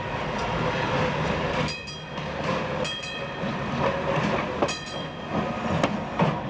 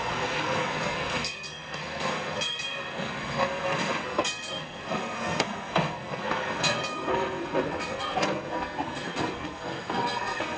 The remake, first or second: second